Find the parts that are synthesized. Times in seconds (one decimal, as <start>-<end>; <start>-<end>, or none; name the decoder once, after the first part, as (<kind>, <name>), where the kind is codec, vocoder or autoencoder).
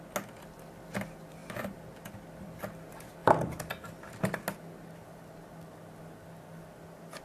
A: none